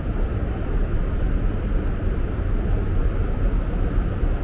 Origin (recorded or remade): recorded